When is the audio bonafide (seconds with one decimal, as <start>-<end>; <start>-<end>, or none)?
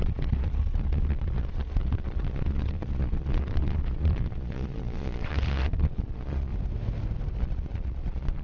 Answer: 6.5-7.4